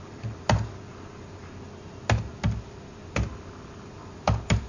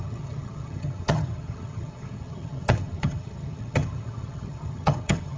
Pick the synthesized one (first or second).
second